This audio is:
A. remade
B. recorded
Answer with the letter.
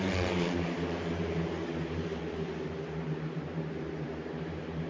A